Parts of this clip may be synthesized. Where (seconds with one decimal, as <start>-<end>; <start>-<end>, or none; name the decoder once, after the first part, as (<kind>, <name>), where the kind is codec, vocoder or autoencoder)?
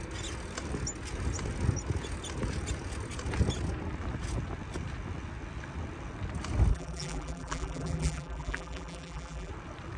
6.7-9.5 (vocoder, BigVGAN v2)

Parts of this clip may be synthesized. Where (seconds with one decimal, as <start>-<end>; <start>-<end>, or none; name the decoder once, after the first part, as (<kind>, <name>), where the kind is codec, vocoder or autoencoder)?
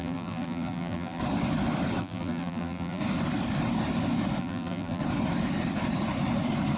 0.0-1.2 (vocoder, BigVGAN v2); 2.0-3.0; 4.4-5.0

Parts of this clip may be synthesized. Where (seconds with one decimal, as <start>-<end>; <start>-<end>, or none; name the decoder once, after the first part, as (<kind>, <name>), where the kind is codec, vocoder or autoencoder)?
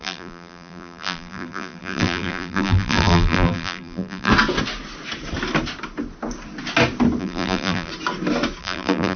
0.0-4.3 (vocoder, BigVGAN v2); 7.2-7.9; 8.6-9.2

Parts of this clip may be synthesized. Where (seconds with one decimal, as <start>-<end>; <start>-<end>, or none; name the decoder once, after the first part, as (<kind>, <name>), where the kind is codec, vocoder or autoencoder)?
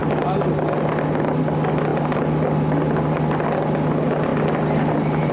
none